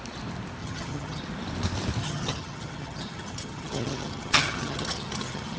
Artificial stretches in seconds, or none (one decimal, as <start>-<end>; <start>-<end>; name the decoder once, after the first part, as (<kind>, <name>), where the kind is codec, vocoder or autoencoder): 0.6-1.2 (vocoder, HiFi-GAN); 2.0-5.6